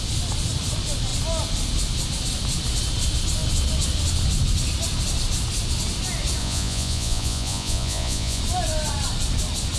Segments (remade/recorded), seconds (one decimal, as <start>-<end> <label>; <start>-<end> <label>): 0.0-6.4 recorded; 6.4-8.4 remade; 8.4-9.8 recorded